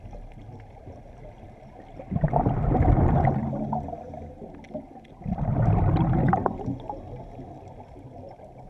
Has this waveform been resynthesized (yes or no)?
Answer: no